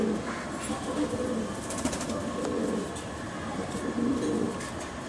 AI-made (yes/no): no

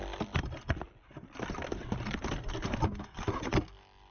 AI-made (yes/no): no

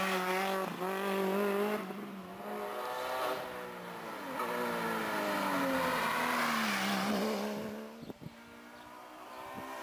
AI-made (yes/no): no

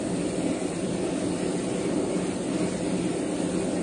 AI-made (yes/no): no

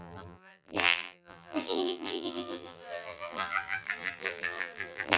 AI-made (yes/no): yes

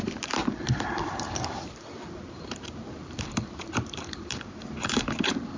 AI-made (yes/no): yes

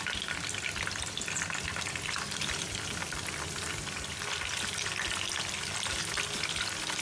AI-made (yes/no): no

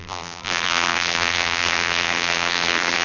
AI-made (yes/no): yes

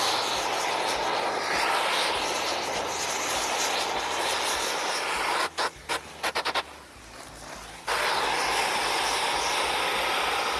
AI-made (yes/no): no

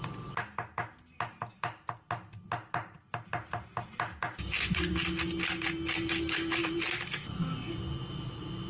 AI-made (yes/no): no